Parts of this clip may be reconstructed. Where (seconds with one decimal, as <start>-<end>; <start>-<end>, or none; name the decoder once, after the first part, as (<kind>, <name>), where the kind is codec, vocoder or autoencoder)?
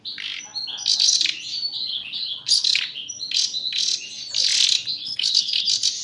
1.9-2.8 (codec, HILCodec); 5.0-5.6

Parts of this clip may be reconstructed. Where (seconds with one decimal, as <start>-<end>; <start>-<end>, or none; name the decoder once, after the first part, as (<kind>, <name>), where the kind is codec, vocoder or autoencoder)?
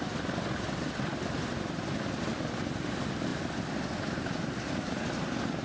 none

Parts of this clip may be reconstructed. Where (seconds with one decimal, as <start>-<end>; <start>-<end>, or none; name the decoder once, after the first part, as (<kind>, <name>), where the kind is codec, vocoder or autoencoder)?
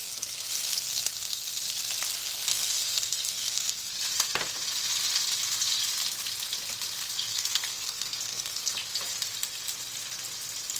0.0-1.6 (codec, SNAC); 2.2-3.9; 7.3-8.7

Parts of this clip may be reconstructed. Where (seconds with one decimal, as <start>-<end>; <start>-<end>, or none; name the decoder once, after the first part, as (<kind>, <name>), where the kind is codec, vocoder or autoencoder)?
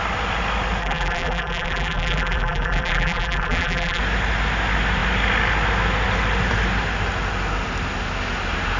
0.8-4.0 (vocoder, BigVGAN v2)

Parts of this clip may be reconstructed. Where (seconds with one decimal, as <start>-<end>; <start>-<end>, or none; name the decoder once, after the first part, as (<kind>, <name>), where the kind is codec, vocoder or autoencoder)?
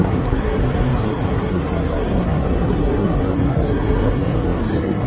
0.0-5.1 (codec, SNAC)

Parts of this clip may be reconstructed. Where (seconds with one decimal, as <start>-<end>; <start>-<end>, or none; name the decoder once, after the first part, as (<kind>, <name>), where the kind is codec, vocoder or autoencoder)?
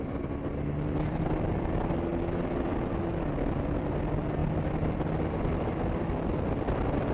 0.0-2.1 (vocoder, BigVGAN v2); 3.8-7.1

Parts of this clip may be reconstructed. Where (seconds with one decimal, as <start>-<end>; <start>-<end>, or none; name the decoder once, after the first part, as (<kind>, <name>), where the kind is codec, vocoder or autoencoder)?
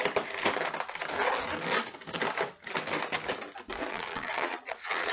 3.9-5.1 (vocoder, Vocos)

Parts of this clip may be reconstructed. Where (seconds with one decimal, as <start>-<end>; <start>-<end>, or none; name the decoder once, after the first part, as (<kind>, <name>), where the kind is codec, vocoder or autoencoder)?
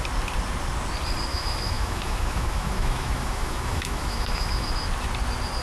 1.3-4.7 (autoencoder, DAC-VAE)